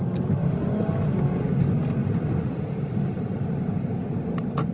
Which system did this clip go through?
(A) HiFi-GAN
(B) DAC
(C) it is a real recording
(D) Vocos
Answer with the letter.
C